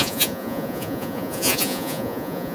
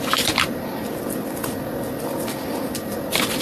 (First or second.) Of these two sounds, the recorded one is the second